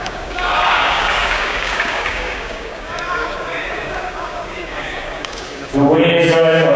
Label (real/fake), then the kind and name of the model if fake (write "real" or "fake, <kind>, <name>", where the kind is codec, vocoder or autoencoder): fake, codec, DAC